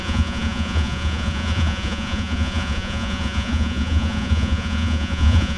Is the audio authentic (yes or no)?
no